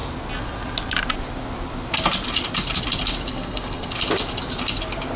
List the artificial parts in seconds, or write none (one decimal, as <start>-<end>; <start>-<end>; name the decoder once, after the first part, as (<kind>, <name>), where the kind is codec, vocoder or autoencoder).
3.3-3.9 (codec, SNAC)